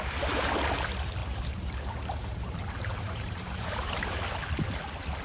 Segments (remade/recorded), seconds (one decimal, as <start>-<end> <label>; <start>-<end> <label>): 0.0-1.2 recorded; 1.2-4.3 remade; 4.3-5.2 recorded